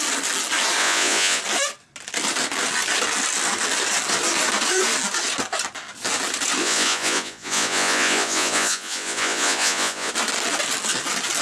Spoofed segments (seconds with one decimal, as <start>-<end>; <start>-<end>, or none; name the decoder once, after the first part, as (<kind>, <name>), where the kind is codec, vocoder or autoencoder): 0.8-1.4 (vocoder, Vocos); 6.6-10.1